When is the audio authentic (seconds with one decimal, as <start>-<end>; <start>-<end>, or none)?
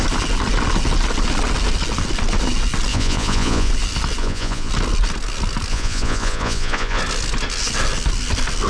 0.0-2.9; 3.7-4.2; 4.7-5.7; 7.0-8.7